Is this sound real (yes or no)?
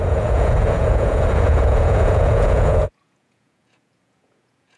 no